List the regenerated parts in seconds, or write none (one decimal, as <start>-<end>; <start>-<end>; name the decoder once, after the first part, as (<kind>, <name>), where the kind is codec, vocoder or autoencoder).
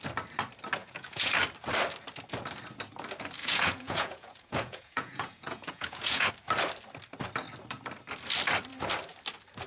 0.8-1.3 (vocoder, Vocos); 3.4-6.3